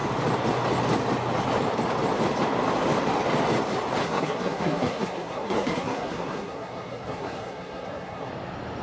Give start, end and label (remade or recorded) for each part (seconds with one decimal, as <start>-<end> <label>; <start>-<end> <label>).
0.0-4.0 recorded; 4.0-8.3 remade; 8.3-8.8 recorded